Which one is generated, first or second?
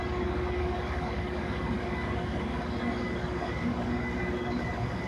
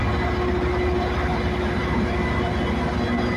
first